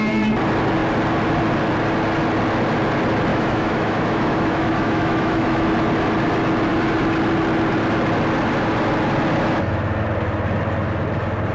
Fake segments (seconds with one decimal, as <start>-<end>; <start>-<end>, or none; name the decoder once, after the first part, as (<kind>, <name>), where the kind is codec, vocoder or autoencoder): 3.3-5.7 (autoencoder, DAC-VAE)

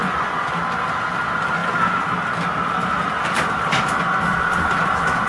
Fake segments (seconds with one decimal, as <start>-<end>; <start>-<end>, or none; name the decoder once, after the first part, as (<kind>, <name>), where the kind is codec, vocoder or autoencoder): 0.0-0.5 (vocoder, Vocos)

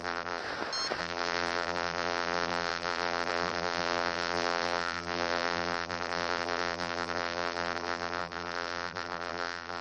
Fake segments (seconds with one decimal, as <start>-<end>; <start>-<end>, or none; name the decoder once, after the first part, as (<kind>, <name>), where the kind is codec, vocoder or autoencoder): 0.0-0.4 (vocoder, BigVGAN v2); 1.0-9.8

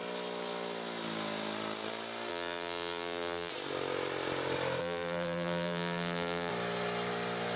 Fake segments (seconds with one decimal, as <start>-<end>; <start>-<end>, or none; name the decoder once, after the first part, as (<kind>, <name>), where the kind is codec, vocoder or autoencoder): 2.3-3.5 (vocoder, BigVGAN v2); 4.8-6.5

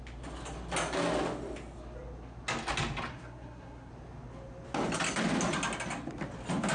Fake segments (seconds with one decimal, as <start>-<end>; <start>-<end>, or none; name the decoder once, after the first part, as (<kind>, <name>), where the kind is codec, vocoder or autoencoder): 3.1-3.9 (codec, SNAC)

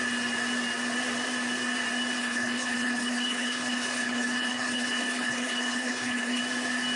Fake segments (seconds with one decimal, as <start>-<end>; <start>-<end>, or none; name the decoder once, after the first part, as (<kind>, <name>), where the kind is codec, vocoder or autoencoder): 2.2-6.4 (codec, HILCodec)

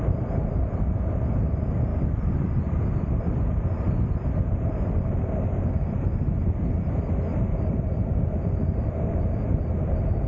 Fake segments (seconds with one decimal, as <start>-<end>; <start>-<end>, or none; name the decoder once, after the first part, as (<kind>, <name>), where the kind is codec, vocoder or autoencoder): 1.9-3.2 (vocoder, BigVGAN v2)

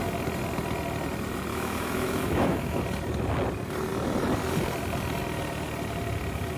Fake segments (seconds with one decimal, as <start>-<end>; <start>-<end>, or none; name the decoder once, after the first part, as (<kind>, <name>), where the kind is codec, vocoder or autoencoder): 1.5-2.8 (autoencoder, DAC-VAE)